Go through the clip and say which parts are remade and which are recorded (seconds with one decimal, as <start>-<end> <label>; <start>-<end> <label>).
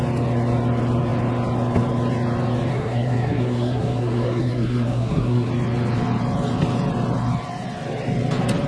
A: 0.0-2.7 recorded; 2.7-5.5 remade; 5.5-8.7 recorded